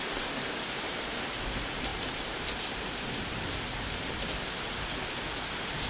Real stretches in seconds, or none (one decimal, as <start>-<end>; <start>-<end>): 0.0-1.9; 5.4-5.9